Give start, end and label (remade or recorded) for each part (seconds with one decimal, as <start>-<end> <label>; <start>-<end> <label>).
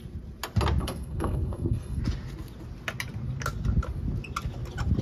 0.0-0.8 recorded; 0.8-2.0 remade; 2.0-5.0 recorded